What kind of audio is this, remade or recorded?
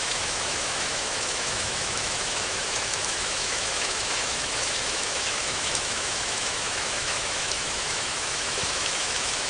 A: remade